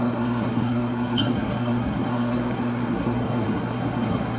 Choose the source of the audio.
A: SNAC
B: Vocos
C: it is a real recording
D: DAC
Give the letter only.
A